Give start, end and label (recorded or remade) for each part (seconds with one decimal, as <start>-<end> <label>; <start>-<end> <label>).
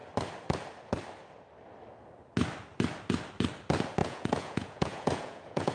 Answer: 0.0-4.0 recorded; 4.0-5.7 remade